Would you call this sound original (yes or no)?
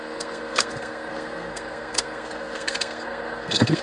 no